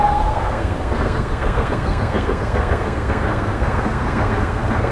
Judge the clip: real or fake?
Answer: fake